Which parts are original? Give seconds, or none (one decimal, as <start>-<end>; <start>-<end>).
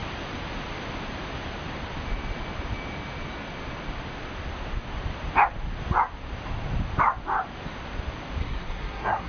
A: 0.0-8.4